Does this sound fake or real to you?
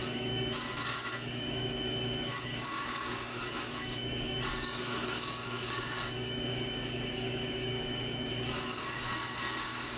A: fake